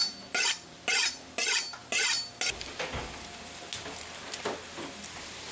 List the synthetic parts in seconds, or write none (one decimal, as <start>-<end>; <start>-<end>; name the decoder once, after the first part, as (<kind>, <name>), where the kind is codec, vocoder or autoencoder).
none